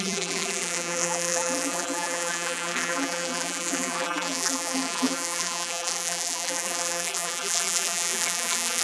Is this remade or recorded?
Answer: remade